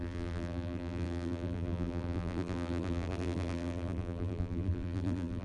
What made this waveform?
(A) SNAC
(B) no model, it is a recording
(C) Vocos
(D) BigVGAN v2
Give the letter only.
D